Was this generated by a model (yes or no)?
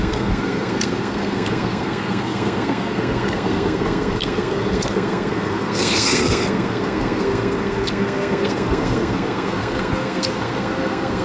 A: yes